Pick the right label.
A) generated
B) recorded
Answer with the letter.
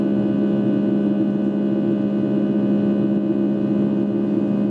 B